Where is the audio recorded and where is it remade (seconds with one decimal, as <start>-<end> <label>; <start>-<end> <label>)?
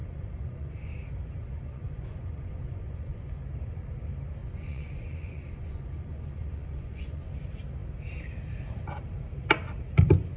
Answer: 0.0-0.9 remade; 0.9-1.4 recorded; 1.4-3.4 remade; 3.4-4.4 recorded; 4.4-7.3 remade; 7.3-10.4 recorded